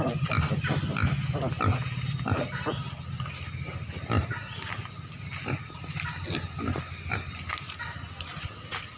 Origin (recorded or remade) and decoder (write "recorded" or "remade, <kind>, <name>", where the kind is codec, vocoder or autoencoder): recorded